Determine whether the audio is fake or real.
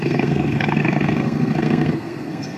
fake